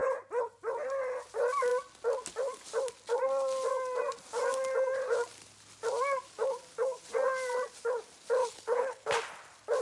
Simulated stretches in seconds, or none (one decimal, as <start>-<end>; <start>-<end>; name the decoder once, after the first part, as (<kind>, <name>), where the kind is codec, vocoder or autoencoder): 8.4-9.1 (codec, HILCodec)